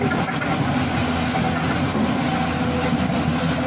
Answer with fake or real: real